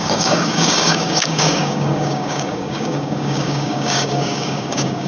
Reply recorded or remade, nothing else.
remade